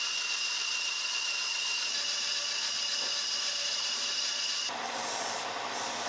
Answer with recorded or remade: recorded